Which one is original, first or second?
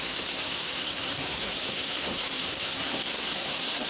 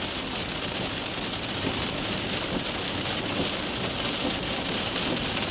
second